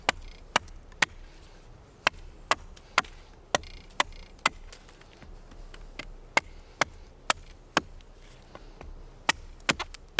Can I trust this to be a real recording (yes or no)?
yes